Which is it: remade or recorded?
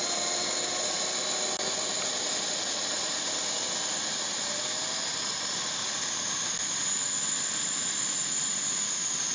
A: recorded